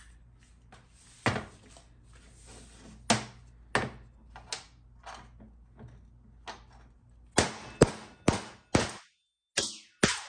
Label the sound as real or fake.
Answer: real